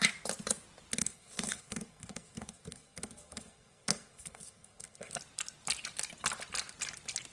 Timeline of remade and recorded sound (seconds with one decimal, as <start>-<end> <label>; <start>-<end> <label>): 0.0-1.0 recorded; 1.0-5.2 remade; 5.2-7.3 recorded